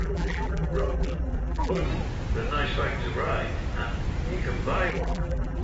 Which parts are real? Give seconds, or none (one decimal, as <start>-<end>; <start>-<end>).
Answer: 1.8-4.9